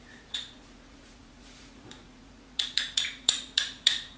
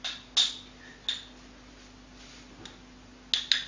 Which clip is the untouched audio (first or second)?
second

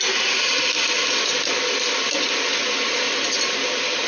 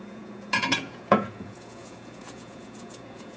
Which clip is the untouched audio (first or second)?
first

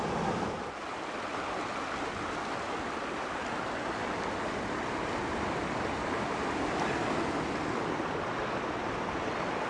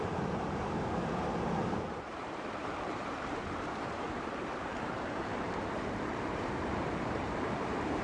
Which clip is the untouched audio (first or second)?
first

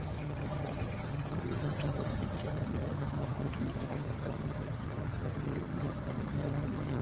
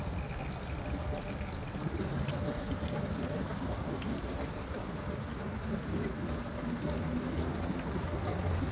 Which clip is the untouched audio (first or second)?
second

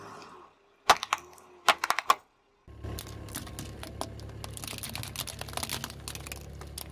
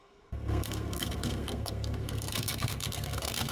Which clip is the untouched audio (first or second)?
first